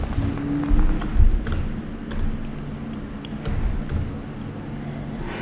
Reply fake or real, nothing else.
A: real